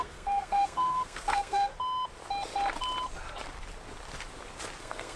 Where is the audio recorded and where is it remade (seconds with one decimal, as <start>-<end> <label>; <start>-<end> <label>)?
0.0-1.7 remade; 1.7-4.8 recorded; 4.8-5.2 remade